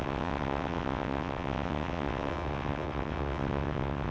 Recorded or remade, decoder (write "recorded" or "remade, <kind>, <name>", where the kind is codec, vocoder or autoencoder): remade, vocoder, WaveNeXt